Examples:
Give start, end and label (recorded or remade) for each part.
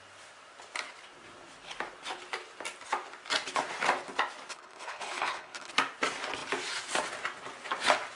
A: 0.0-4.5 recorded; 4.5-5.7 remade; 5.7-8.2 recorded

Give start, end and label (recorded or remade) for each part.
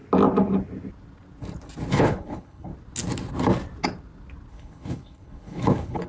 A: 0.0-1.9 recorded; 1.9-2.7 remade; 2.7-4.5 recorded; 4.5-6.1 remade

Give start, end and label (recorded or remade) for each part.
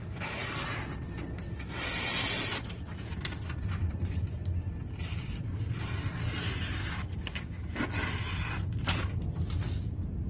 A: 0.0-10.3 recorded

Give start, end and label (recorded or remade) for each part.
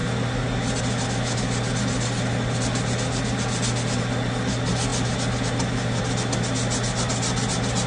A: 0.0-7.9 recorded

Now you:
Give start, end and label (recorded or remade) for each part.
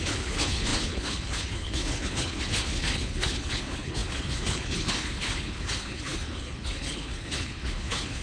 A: 0.0-8.2 remade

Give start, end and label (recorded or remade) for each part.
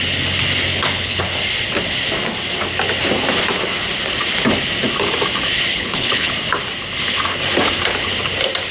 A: 0.0-0.7 recorded; 0.7-1.2 remade; 1.2-5.7 recorded; 5.7-6.3 remade; 6.3-8.7 recorded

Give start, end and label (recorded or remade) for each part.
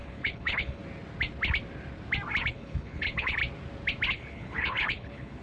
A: 0.0-0.8 remade; 0.8-2.5 recorded; 2.5-3.4 remade; 3.4-4.1 recorded; 4.1-5.4 remade